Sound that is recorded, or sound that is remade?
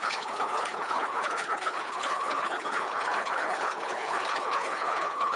remade